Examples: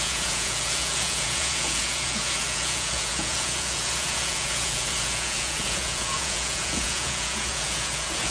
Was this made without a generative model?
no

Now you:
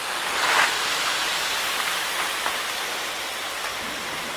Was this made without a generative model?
no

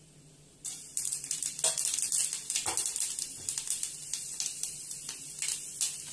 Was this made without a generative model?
yes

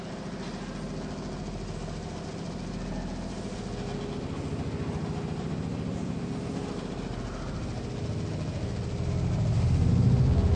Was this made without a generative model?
yes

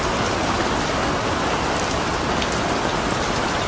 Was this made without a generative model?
yes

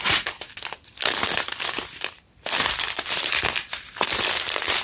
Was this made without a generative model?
yes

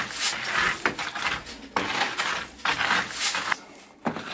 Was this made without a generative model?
yes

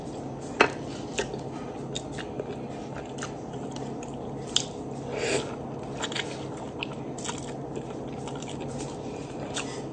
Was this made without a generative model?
yes